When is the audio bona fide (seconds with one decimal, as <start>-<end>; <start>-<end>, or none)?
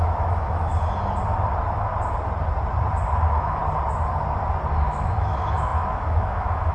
0.7-3.2; 3.6-4.9